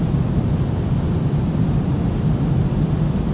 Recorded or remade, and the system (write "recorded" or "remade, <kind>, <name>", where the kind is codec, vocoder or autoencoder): recorded